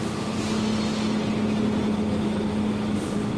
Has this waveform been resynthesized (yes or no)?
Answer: no